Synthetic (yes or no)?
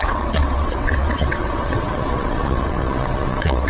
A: yes